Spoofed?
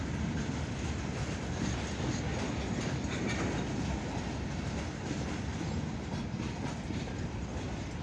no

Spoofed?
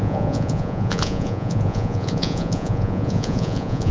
yes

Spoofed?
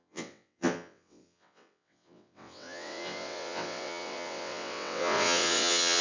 yes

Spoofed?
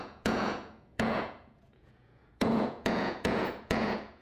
yes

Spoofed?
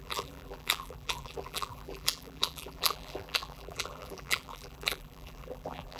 yes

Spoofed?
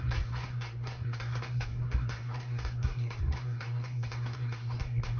yes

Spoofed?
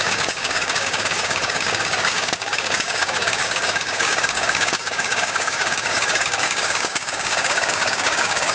yes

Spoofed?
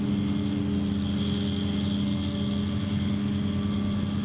no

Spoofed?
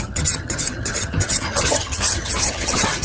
yes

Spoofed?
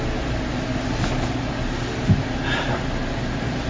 no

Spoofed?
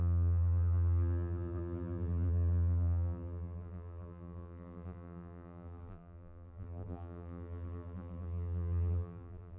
yes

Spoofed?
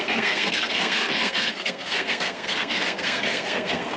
yes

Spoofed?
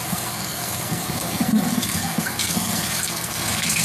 yes